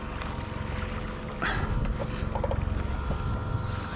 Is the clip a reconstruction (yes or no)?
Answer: no